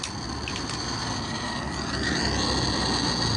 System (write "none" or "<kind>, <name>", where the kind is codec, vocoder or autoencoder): none